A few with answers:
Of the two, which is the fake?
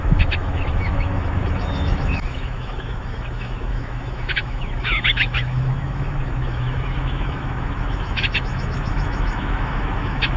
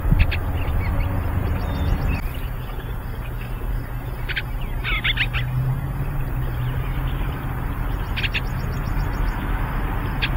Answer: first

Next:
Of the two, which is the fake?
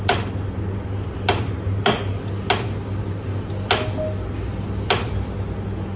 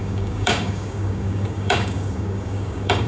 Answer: second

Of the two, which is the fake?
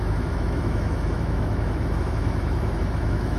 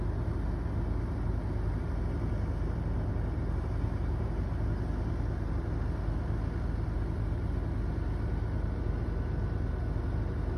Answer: first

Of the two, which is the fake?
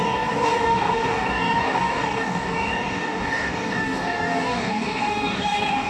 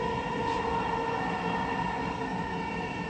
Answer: first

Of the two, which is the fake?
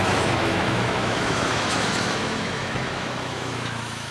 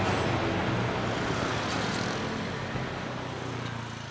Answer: first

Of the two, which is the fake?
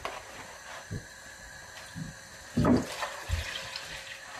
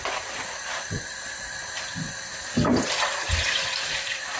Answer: second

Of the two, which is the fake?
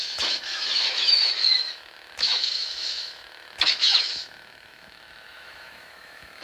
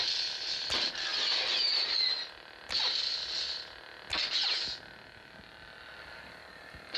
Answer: first